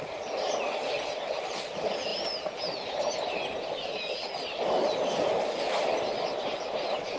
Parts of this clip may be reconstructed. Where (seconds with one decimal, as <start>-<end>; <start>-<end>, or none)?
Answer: none